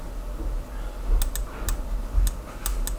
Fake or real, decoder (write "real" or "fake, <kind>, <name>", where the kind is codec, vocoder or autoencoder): real